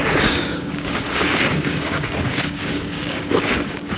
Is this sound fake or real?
fake